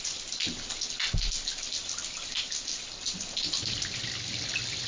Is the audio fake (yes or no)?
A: no